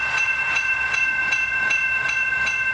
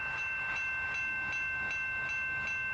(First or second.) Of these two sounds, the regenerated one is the first